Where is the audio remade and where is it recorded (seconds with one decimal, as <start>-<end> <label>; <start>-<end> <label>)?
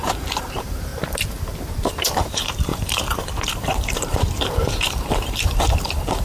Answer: 0.0-0.9 remade; 0.9-1.9 recorded; 1.9-6.2 remade